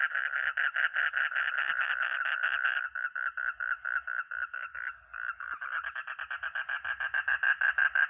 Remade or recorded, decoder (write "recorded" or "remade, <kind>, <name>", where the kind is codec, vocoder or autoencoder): recorded